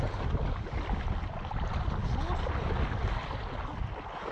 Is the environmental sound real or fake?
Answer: real